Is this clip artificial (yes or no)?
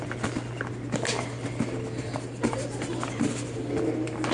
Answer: yes